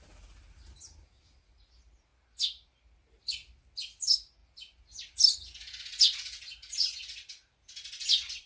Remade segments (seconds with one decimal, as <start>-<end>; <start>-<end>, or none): none